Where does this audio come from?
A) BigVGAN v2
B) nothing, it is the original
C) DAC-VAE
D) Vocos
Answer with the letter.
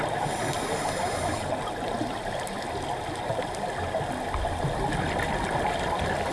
B